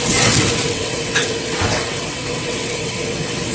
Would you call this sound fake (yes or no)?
yes